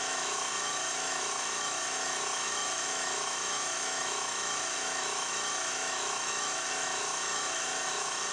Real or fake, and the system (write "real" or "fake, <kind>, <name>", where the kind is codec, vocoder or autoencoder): fake, autoencoder, DAC-VAE